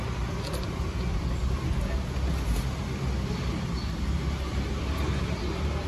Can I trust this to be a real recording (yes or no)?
yes